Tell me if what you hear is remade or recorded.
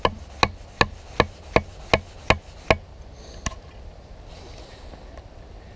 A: recorded